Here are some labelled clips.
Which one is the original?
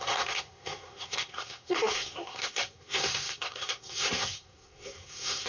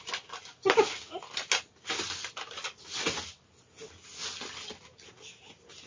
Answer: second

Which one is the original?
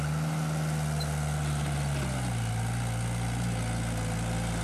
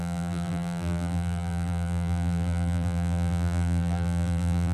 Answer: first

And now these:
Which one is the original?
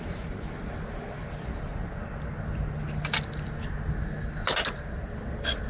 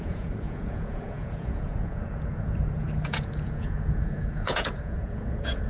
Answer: first